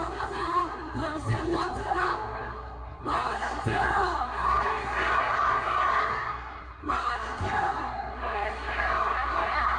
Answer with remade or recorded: remade